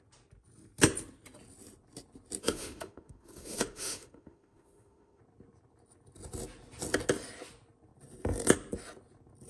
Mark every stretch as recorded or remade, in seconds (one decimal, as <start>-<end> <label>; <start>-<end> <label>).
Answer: 0.0-2.4 recorded; 2.4-5.2 remade; 5.2-9.5 recorded